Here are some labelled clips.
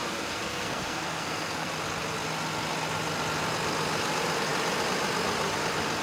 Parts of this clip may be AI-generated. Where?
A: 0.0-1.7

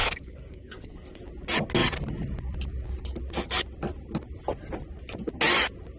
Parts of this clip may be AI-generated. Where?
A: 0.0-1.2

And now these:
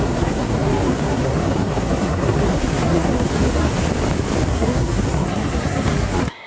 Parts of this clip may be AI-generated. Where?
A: 0.0-3.7; 4.5-6.5

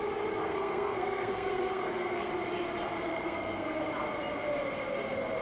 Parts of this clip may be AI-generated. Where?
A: 0.4-2.3; 3.1-3.8

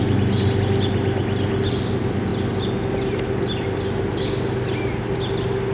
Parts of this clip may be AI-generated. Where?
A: none

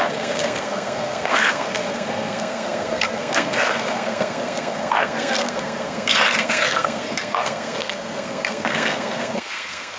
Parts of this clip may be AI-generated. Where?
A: 0.0-10.0